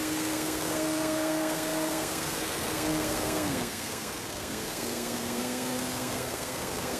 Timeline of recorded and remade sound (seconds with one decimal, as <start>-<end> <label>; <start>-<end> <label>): 0.0-7.0 remade

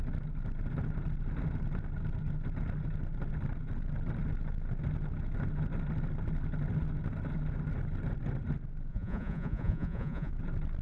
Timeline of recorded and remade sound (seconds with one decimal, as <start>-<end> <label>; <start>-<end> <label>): 0.0-8.9 recorded; 8.9-10.3 remade; 10.3-10.8 recorded

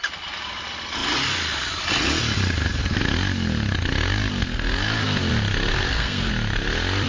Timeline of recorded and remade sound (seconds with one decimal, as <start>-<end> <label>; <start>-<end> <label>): 0.0-5.7 recorded; 5.7-6.3 remade; 6.3-7.1 recorded

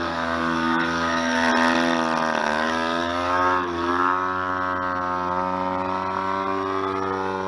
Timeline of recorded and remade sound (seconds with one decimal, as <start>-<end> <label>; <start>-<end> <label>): 0.0-1.5 remade; 1.5-2.4 recorded; 2.4-4.5 remade; 4.5-7.5 recorded

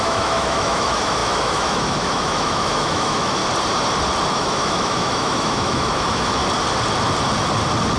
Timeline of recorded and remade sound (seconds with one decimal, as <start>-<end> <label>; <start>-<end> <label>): 0.0-3.4 remade; 3.4-4.3 recorded; 4.3-6.4 remade; 6.4-8.0 recorded